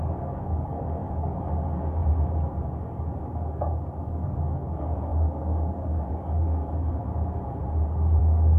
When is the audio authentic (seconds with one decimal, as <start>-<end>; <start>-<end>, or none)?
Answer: 2.0-4.0; 7.6-8.2